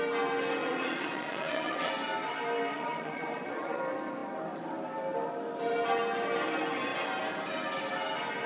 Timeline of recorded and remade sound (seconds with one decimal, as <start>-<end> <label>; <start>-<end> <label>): 0.0-0.6 recorded; 0.6-1.9 remade; 1.9-2.7 recorded; 2.7-3.8 remade; 3.8-8.5 recorded